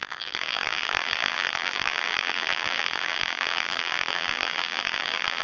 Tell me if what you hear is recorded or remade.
remade